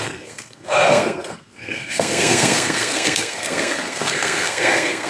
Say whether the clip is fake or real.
fake